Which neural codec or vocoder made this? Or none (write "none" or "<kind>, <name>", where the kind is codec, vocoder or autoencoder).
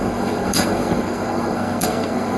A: codec, SNAC